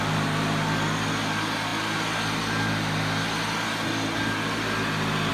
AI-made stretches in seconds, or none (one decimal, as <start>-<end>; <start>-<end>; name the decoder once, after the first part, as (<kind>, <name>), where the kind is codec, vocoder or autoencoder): none